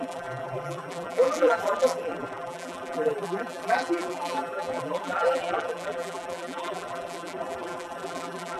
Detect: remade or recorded remade